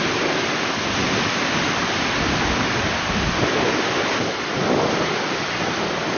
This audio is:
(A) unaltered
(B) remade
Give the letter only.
A